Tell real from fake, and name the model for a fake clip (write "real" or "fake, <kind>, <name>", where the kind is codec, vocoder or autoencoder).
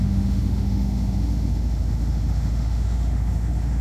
fake, autoencoder, DAC-VAE